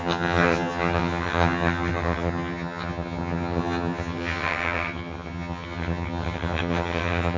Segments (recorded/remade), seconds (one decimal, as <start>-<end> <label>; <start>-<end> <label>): 0.0-7.4 remade